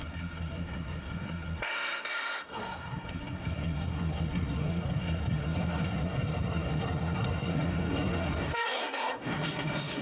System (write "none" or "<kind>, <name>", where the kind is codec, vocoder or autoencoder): codec, SNAC